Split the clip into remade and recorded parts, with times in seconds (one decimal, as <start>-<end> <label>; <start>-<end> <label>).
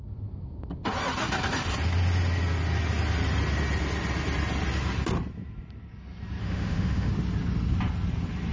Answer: 0.0-6.4 recorded; 6.4-7.1 remade; 7.1-8.5 recorded